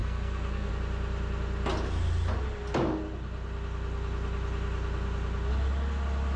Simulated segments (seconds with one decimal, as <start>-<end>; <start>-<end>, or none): 0.0-0.7